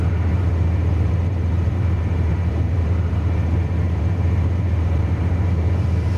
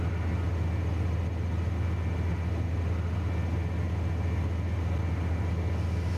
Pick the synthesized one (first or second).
first